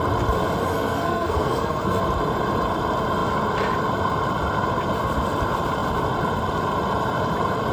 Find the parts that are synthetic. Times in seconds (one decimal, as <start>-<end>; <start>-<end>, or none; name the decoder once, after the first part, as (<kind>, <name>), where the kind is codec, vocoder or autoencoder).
0.6-2.0 (codec, SNAC)